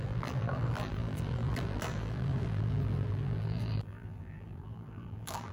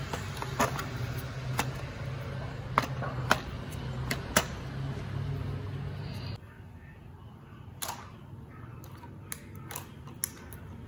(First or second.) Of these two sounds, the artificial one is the first